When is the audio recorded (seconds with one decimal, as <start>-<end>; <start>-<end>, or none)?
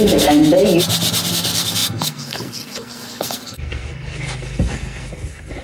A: 0.4-1.3